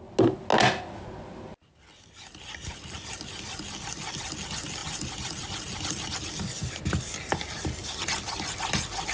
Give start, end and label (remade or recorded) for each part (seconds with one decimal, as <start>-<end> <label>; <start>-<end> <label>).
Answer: 0.0-9.1 recorded